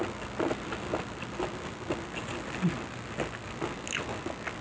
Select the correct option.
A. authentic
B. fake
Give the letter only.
A